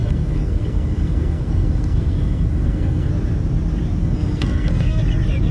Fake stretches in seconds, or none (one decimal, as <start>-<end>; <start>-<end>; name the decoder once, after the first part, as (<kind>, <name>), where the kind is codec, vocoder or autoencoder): 0.0-3.1 (codec, SNAC); 4.0-5.0